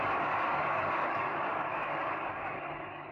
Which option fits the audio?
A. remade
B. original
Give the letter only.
A